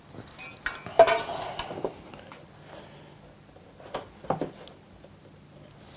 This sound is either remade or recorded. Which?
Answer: recorded